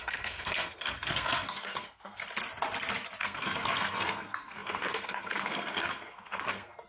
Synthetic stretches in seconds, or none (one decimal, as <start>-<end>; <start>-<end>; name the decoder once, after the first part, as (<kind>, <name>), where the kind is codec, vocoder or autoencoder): 0.0-2.2 (codec, SNAC); 3.2-6.9